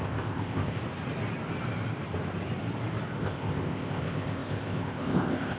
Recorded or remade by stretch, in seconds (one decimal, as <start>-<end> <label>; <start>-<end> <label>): 0.0-0.8 remade; 0.8-3.2 recorded; 3.2-5.6 remade